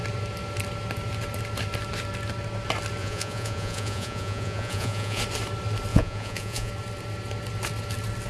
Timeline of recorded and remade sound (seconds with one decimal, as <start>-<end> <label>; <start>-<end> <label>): 0.0-3.0 recorded; 3.0-5.2 remade; 5.2-5.9 recorded; 5.9-6.7 remade; 6.7-8.3 recorded